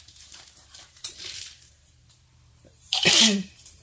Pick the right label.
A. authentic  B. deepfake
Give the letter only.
B